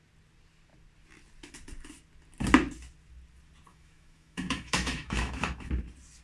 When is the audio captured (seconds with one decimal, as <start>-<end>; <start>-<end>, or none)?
0.0-3.7; 5.7-6.2

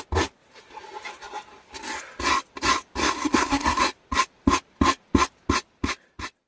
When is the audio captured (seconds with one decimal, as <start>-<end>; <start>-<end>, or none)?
0.0-3.0; 3.8-6.5